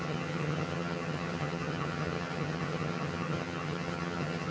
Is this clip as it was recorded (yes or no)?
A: no